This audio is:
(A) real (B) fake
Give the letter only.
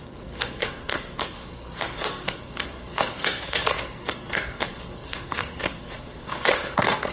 B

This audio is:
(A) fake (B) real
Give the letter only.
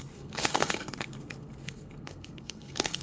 A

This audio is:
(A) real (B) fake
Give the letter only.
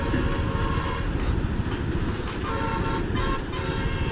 A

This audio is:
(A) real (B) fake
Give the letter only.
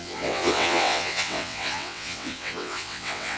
B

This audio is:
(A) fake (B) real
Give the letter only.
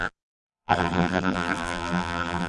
A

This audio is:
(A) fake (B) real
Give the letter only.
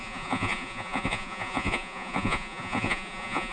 A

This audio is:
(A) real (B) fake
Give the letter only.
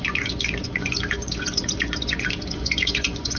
B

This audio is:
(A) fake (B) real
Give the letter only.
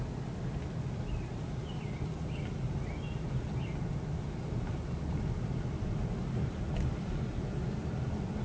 B